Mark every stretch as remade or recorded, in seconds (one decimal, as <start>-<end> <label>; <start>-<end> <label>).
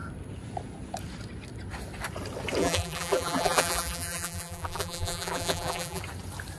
0.0-2.6 recorded; 2.6-6.0 remade; 6.0-6.6 recorded